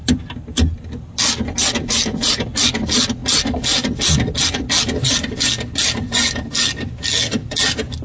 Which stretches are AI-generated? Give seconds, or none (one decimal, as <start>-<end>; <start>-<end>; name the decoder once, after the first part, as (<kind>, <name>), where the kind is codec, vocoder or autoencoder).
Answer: none